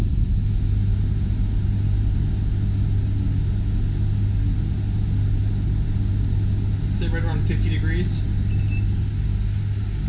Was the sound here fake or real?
real